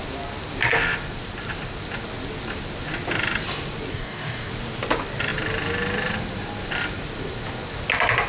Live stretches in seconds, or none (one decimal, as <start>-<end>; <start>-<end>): 0.0-3.9; 4.5-8.3

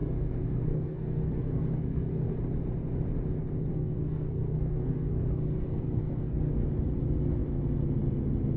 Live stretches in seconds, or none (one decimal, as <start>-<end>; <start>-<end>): 2.4-3.7; 6.7-8.6

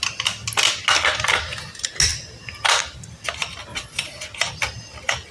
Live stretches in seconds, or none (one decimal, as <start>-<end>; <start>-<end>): 0.0-3.7; 4.2-5.3

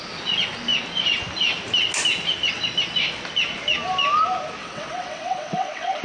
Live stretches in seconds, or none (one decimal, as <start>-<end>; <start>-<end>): 0.0-4.6

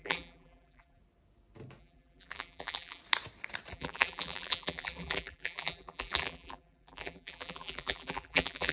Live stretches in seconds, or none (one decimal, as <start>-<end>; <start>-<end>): 1.0-1.8; 3.0-3.7

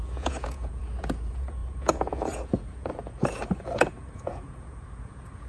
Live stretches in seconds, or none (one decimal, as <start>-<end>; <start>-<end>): none

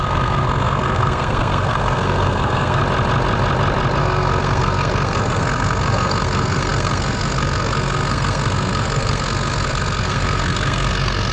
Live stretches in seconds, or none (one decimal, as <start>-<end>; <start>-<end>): 2.8-4.0